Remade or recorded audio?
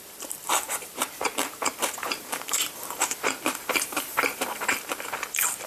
remade